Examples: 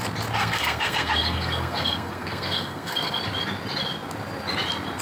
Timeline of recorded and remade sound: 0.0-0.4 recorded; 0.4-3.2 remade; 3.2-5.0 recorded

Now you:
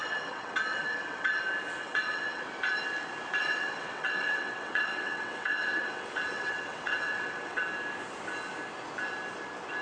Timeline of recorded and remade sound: 0.0-1.4 remade; 1.4-1.8 recorded; 1.8-2.4 remade; 2.4-3.4 recorded; 3.4-7.6 remade; 7.6-9.8 recorded

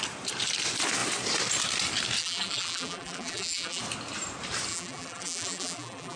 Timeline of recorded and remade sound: 0.0-2.2 recorded; 2.2-3.8 remade; 3.8-4.7 recorded; 4.7-6.2 remade

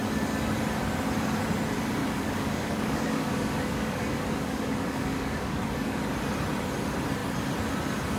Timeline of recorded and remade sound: 0.0-2.0 recorded; 2.0-6.0 remade; 6.0-8.2 recorded

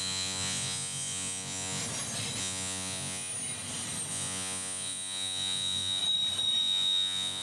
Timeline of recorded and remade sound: 0.0-1.8 remade; 1.8-2.4 recorded; 2.4-3.3 remade; 3.3-4.1 recorded; 4.1-6.0 remade; 6.0-6.6 recorded; 6.6-7.4 remade

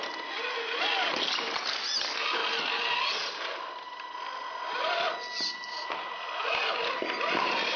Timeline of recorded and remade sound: 0.0-7.8 recorded

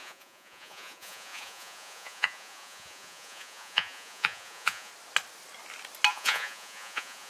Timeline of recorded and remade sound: 0.0-4.9 remade; 4.9-6.1 recorded; 6.1-7.3 remade

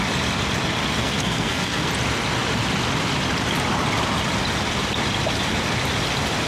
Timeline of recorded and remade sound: 0.0-1.0 recorded; 1.0-1.9 remade; 1.9-6.5 recorded